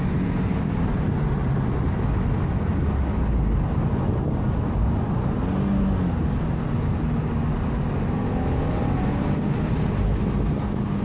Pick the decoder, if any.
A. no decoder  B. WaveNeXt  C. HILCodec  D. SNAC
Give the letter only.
A